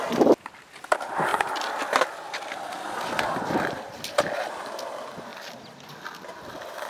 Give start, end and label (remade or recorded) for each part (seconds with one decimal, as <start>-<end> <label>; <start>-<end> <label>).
0.0-5.3 remade; 5.3-6.4 recorded; 6.4-6.9 remade